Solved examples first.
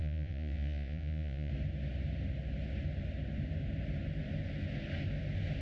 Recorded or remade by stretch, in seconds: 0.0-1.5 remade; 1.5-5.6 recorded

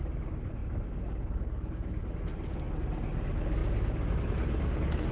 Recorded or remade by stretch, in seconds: 0.0-5.1 recorded

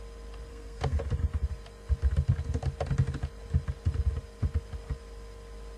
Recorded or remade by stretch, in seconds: 0.0-0.5 recorded; 0.5-1.0 remade; 1.0-5.8 recorded

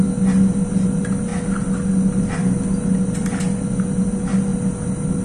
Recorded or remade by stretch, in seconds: 0.0-5.2 recorded